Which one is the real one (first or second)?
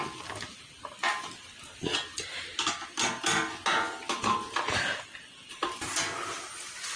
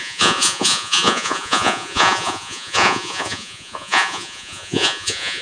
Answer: first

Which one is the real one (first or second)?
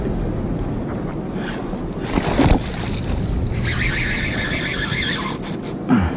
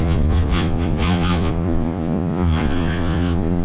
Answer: first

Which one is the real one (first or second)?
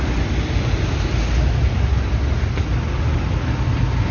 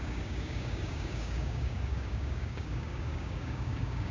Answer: first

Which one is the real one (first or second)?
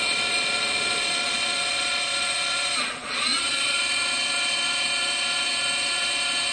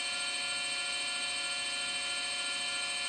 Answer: second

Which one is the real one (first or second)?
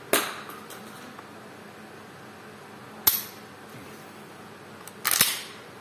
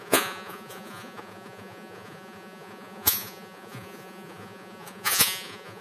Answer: first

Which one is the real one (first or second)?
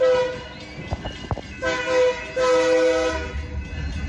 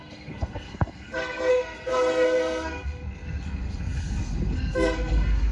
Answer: first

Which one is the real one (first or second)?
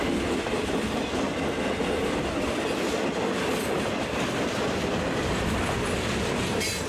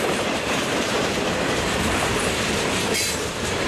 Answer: first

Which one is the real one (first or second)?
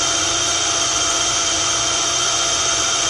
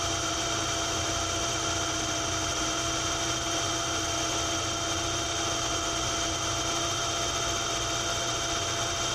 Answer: second